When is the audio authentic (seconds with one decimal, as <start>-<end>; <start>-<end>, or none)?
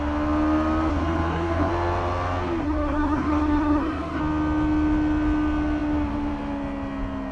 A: 0.0-0.9; 1.7-2.6; 4.2-7.3